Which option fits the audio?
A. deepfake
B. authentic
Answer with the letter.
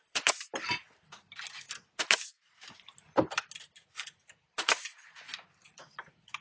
B